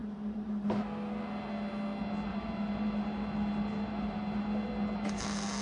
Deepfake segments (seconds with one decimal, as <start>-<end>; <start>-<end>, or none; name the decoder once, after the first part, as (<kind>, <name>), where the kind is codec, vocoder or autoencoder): 0.0-0.7 (vocoder, BigVGAN v2); 2.3-4.7